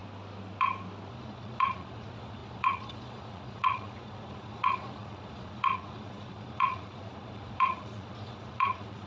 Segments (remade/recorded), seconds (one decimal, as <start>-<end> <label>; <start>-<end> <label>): 0.0-1.1 recorded; 1.1-9.1 remade